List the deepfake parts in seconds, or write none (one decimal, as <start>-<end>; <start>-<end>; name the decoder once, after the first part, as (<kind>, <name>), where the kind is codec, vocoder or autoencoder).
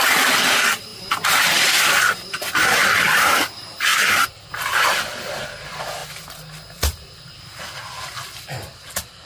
none